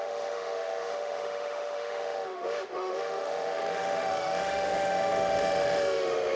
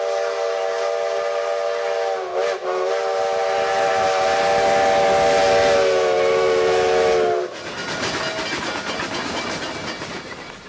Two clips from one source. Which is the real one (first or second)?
second